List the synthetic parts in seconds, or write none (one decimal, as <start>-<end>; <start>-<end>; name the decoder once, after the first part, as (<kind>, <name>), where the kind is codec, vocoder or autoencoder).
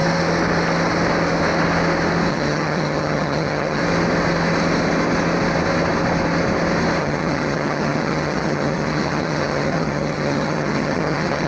2.3-3.8 (vocoder, HiFi-GAN); 7.0-11.5